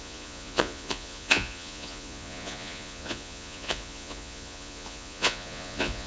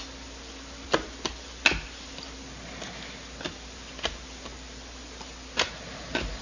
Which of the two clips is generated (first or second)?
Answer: first